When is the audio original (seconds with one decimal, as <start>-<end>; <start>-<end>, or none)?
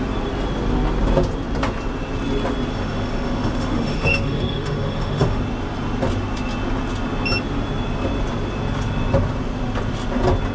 0.0-2.7; 5.4-10.5